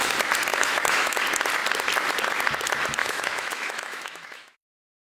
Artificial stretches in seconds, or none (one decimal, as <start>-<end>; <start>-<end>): 0.5-1.2; 3.0-5.1

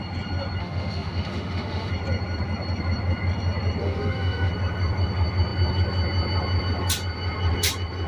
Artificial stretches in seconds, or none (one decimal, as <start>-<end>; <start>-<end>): 0.6-1.9; 3.8-4.5

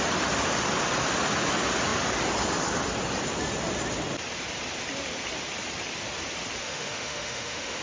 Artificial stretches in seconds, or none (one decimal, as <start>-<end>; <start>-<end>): 6.6-7.8

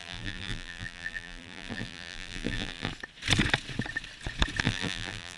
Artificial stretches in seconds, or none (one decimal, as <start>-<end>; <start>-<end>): 0.0-2.9; 4.6-5.4

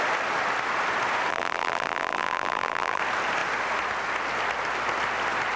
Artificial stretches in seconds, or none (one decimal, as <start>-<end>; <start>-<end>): 1.3-3.0

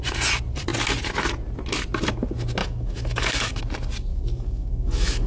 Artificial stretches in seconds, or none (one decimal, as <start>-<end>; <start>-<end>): 2.6-3.6; 4.1-5.3

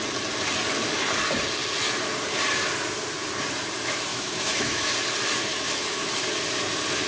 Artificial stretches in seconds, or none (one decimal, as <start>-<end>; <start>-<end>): 4.1-4.9; 5.5-6.1